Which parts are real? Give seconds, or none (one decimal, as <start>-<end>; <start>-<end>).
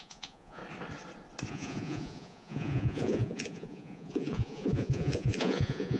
0.6-1.5